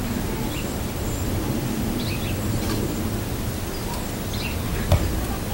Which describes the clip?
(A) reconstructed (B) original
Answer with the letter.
B